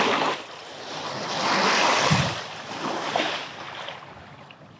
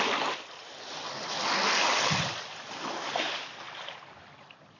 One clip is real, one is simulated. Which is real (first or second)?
second